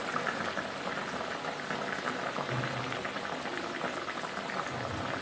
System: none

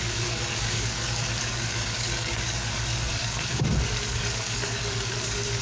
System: codec, DAC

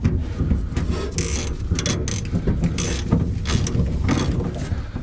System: none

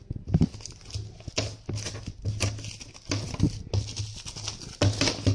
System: none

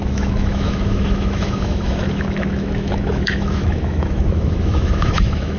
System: autoencoder, DAC-VAE